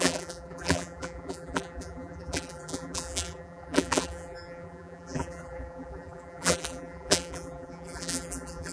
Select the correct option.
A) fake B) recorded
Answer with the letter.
A